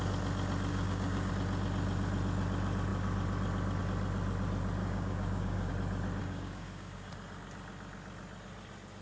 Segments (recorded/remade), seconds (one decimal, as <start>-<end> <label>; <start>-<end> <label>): 0.0-0.7 recorded; 0.7-1.3 remade; 1.3-4.8 recorded; 4.8-5.7 remade; 5.7-6.2 recorded; 6.2-7.1 remade; 7.1-9.0 recorded